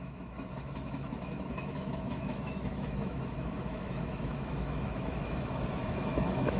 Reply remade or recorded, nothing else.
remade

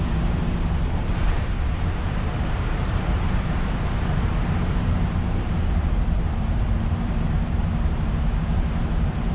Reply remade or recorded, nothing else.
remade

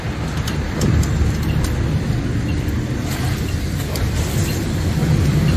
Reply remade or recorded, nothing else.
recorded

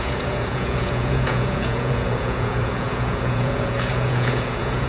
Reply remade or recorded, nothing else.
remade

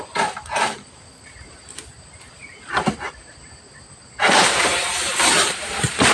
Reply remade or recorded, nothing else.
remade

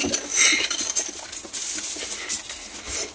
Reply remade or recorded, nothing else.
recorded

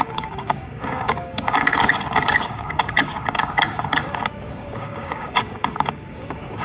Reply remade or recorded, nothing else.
remade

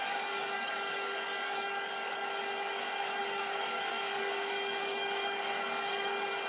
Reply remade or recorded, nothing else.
remade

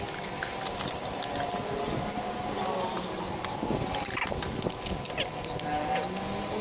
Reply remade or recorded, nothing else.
recorded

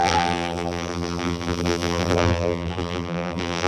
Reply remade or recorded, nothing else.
remade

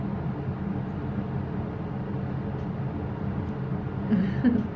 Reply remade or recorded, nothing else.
recorded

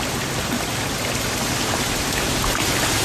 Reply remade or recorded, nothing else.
recorded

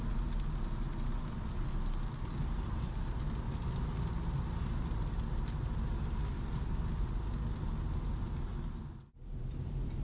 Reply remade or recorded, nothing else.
recorded